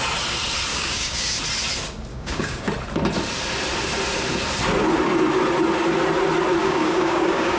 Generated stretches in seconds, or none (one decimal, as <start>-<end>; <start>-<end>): 0.7-1.4; 2.1-2.7; 6.6-7.6